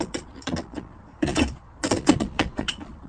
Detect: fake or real fake